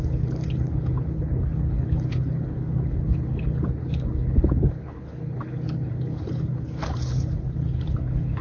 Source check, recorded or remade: remade